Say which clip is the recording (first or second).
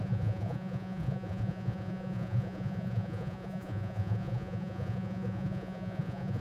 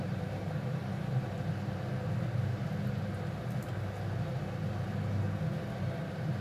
second